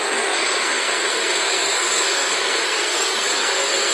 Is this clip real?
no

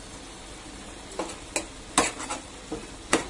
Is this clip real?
yes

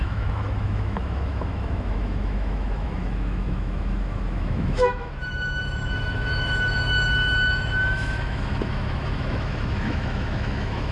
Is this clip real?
no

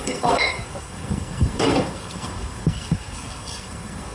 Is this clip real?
no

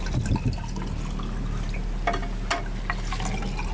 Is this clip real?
yes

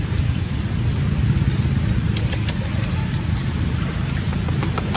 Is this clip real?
yes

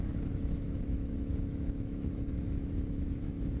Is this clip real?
no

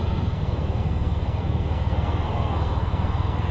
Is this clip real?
no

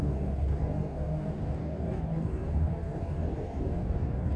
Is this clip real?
no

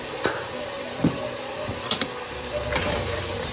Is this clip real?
no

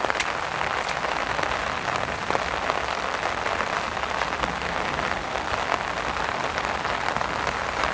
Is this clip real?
yes